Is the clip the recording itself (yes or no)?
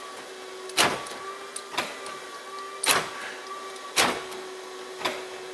yes